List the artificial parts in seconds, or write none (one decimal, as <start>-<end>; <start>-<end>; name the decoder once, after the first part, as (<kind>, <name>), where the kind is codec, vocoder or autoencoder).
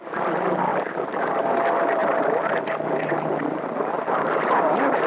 0.7-1.5 (vocoder, BigVGAN v2); 2.0-5.1